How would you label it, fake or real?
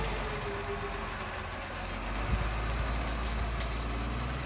real